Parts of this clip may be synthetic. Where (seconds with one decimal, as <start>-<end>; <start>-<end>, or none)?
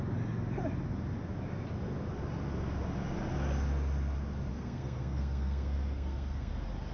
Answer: 4.5-6.5